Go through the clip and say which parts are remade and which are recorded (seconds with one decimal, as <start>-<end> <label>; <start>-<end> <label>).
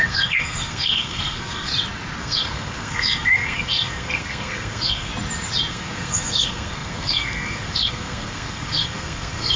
0.0-1.7 remade; 1.7-2.2 recorded; 2.2-5.1 remade; 5.1-5.7 recorded; 5.7-9.6 remade